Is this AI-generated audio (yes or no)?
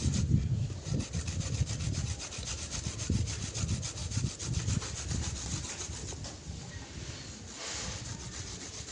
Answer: no